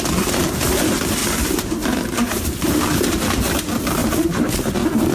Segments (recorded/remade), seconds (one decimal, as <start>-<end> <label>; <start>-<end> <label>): 0.0-1.2 recorded; 1.2-2.6 remade; 2.6-4.0 recorded; 4.0-4.5 remade; 4.5-5.1 recorded

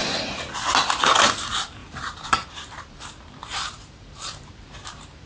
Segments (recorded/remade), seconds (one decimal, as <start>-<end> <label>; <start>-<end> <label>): 0.0-1.8 recorded; 1.8-5.3 remade

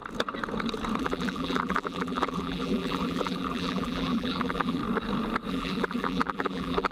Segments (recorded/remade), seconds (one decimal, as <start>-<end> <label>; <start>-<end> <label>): 0.0-1.0 recorded; 1.0-4.8 remade; 4.8-5.5 recorded; 5.5-6.9 remade

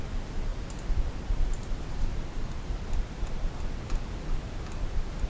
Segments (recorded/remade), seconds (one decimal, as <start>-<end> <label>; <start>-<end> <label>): 0.0-0.5 recorded; 0.5-3.7 remade; 3.7-5.3 recorded